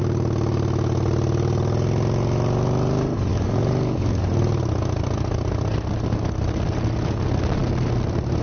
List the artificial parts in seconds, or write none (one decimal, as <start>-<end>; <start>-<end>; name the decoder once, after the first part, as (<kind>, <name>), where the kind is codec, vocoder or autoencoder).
3.3-4.2 (codec, DAC)